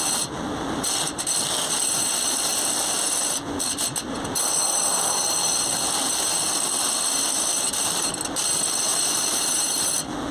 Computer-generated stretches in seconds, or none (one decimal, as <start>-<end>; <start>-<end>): 8.9-9.9